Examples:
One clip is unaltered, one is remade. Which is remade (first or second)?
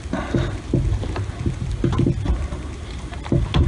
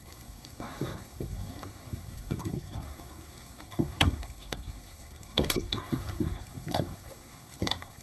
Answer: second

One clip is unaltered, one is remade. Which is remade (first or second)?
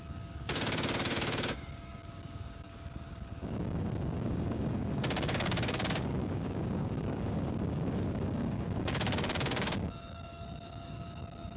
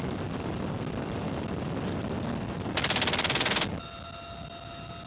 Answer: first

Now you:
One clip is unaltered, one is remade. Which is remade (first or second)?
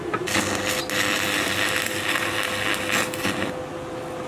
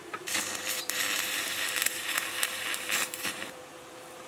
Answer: second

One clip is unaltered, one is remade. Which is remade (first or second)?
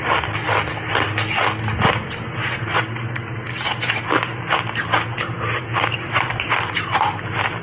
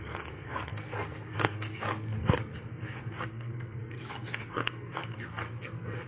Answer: second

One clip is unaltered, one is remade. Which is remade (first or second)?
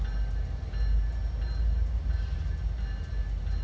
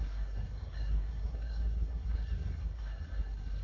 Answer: second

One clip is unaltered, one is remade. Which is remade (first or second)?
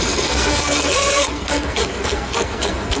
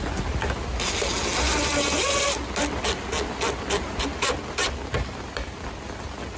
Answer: first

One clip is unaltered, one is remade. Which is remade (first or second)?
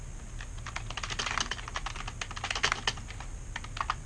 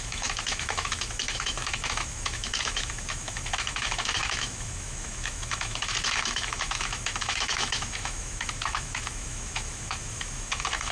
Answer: second